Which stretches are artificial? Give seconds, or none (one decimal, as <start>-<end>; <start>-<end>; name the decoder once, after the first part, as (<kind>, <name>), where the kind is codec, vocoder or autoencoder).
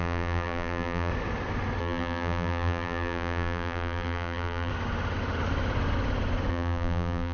0.0-1.1 (vocoder, BigVGAN v2); 1.8-4.7; 6.5-7.3